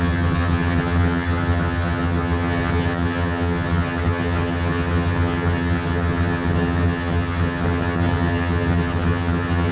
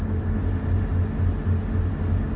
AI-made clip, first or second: first